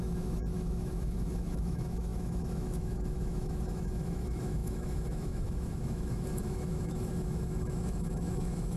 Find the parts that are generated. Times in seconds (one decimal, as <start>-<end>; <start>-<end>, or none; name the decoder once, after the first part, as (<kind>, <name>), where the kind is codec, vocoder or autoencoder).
0.0-8.8 (autoencoder, DAC-VAE)